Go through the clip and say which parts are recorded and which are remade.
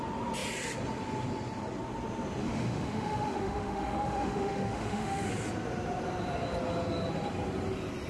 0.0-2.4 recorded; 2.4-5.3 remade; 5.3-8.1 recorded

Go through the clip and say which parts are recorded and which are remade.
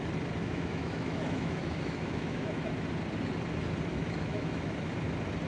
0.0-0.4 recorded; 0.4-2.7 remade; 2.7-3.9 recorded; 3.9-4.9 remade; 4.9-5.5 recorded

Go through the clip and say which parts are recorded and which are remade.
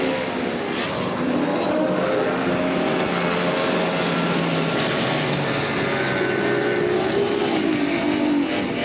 0.0-1.7 recorded; 1.7-2.5 remade; 2.5-8.8 recorded